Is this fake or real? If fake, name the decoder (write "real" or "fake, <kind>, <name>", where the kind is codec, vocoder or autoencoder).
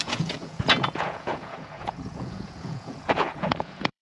fake, vocoder, Vocos